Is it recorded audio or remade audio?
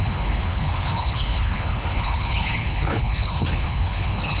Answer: remade